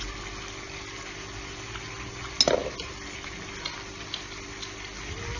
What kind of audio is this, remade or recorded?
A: recorded